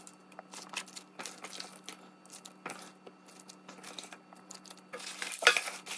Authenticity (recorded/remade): recorded